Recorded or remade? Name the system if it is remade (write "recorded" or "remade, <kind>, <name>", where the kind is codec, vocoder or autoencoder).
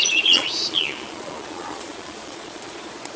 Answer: remade, vocoder, Vocos